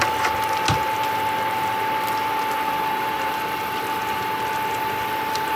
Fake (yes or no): no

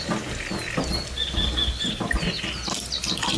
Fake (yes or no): no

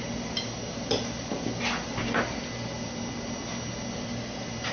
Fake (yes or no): no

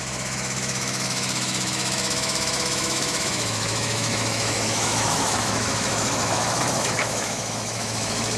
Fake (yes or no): yes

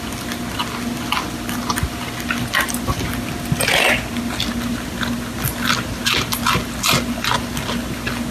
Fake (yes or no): no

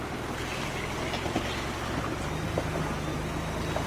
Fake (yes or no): no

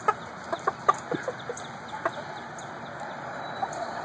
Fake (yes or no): no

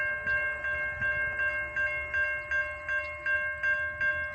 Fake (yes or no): no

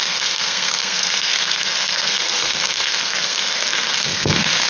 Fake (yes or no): yes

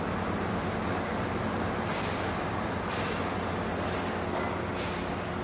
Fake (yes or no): no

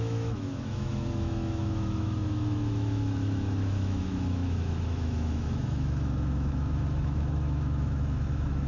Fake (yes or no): yes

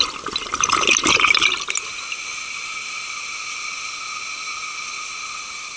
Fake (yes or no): no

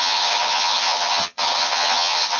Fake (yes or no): yes